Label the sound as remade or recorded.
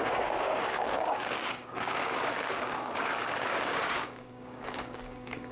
remade